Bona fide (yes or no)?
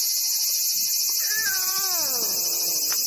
yes